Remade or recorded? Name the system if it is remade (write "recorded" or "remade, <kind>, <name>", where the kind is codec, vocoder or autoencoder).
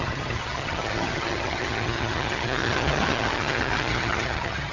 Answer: remade, vocoder, HiFi-GAN